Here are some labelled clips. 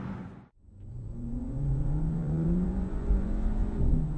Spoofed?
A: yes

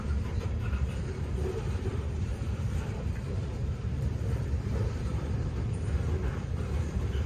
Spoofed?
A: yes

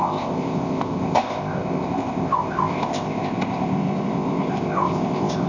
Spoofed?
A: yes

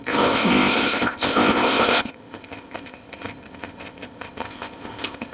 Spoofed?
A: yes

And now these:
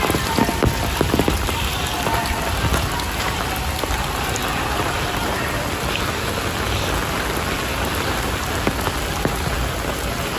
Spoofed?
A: no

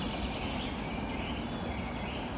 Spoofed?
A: no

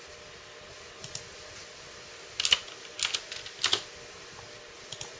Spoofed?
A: no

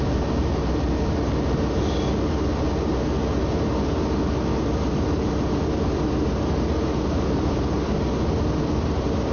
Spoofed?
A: no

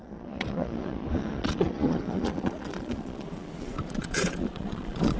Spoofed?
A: yes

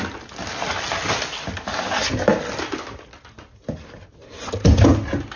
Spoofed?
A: no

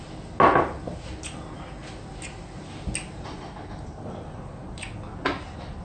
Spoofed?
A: no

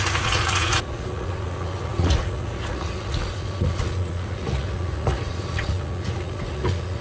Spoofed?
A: yes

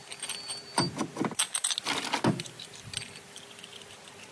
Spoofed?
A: no